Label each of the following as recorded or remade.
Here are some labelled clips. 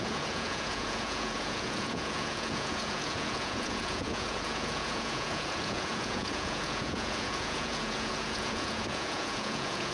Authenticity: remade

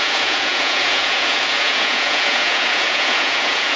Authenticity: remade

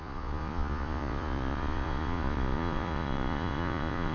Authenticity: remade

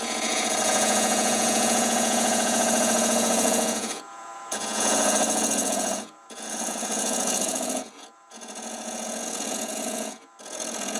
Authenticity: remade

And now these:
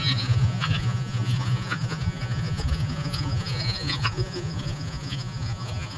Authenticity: remade